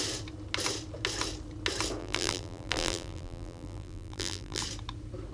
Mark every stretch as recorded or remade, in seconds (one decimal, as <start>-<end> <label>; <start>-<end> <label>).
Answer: 0.0-2.0 recorded; 2.0-4.6 remade; 4.6-5.3 recorded

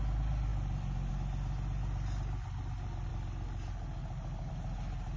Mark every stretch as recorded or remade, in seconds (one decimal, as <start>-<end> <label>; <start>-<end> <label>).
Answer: 0.0-5.2 recorded

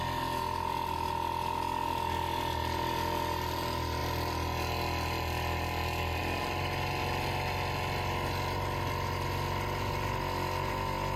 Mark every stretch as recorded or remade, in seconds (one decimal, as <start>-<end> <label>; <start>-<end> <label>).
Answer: 0.0-11.2 recorded

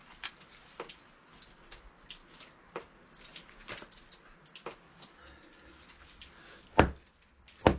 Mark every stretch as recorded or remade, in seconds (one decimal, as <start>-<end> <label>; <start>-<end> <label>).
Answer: 0.0-2.2 recorded; 2.2-3.7 remade; 3.7-7.8 recorded

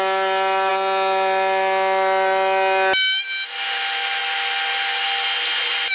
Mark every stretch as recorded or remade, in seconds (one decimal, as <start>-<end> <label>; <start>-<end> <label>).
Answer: 0.0-5.9 recorded

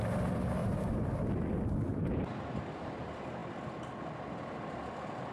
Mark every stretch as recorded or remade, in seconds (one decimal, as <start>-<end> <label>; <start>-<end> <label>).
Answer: 0.0-0.6 recorded; 0.6-1.1 remade; 1.1-1.9 recorded; 1.9-2.6 remade; 2.6-5.3 recorded

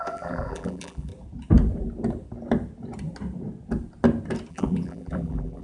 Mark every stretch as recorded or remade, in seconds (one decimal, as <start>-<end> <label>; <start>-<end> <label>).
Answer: 0.0-1.1 remade; 1.1-4.5 recorded; 4.5-5.6 remade

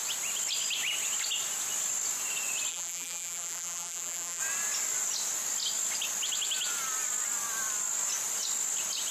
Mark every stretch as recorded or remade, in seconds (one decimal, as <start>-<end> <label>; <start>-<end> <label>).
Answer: 0.0-2.7 recorded; 2.7-4.4 remade; 4.4-9.1 recorded